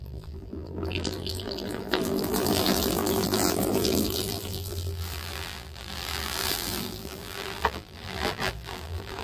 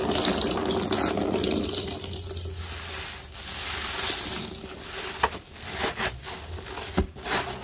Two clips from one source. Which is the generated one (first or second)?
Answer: first